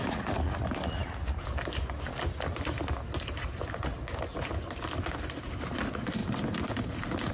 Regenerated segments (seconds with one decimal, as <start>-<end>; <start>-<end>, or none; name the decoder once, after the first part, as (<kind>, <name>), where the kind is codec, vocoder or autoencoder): none